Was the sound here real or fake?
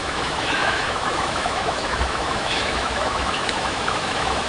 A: fake